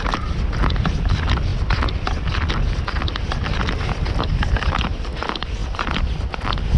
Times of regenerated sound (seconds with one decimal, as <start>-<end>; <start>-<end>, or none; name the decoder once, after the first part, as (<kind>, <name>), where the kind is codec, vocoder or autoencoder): none